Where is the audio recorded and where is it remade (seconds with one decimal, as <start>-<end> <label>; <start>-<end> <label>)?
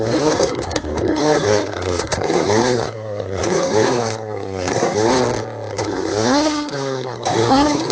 0.0-5.1 remade; 5.1-5.7 recorded; 5.7-7.9 remade